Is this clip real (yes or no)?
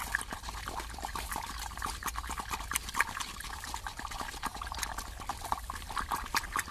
yes